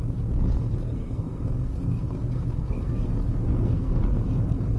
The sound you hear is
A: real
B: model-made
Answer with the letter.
B